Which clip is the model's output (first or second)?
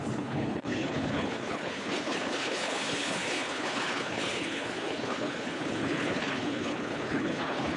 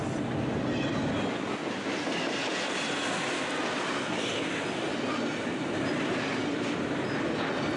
first